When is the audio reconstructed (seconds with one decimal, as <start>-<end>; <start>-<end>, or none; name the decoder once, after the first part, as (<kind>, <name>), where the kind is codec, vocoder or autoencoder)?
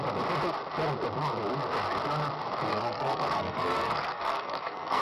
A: 2.7-5.0 (codec, SNAC)